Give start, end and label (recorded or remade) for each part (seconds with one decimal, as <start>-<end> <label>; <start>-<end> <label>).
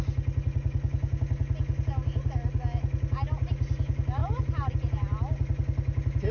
0.0-6.3 recorded